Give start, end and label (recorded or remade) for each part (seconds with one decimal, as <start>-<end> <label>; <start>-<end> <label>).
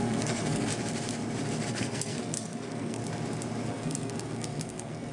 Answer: 0.0-0.7 remade; 0.7-1.7 recorded; 1.7-3.0 remade; 3.0-3.7 recorded; 3.7-5.1 remade